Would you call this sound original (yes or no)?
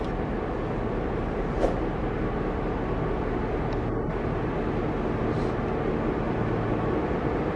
yes